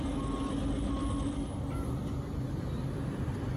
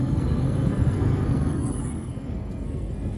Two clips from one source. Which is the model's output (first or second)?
second